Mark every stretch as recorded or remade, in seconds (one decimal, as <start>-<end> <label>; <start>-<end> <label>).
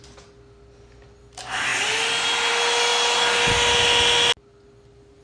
0.0-5.2 recorded